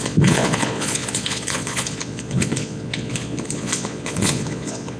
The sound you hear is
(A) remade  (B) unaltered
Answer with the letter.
A